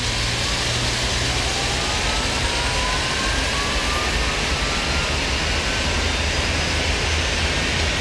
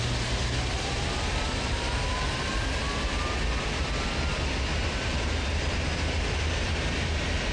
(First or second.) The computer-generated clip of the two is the second